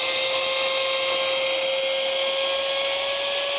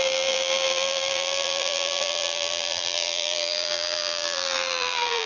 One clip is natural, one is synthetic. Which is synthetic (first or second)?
second